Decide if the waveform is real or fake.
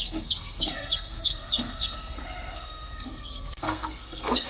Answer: fake